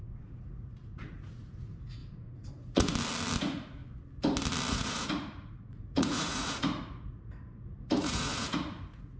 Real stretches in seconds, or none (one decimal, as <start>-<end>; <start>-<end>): 2.9-3.4; 3.8-4.7